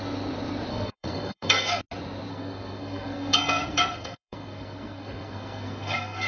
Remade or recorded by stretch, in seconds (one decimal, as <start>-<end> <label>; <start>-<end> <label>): 0.0-0.7 recorded; 0.7-1.8 remade; 1.8-2.3 recorded; 2.3-6.3 remade